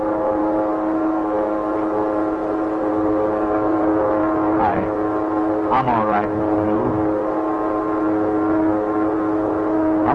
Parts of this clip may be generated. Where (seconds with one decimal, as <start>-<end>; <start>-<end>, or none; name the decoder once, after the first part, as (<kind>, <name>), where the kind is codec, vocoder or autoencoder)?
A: 1.0-1.7 (codec, DAC); 2.9-4.0